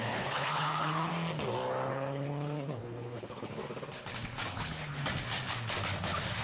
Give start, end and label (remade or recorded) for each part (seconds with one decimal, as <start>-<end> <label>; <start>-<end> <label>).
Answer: 0.0-1.1 remade; 1.1-1.9 recorded; 1.9-3.6 remade; 3.6-4.5 recorded; 4.5-5.0 remade; 5.0-6.4 recorded